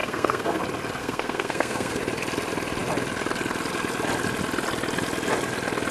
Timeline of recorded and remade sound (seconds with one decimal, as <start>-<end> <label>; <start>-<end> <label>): 0.0-0.6 remade; 0.6-1.0 recorded; 1.0-2.0 remade; 2.0-5.9 recorded